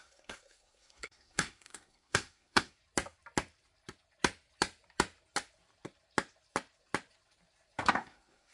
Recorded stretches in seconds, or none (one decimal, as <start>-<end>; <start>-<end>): 2.8-7.9